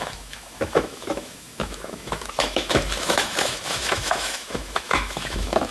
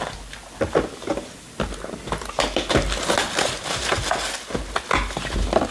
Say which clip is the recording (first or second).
second